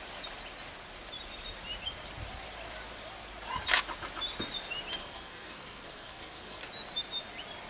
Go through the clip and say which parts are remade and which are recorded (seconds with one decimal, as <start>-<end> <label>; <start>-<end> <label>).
0.0-5.0 recorded; 5.0-6.6 remade; 6.6-7.7 recorded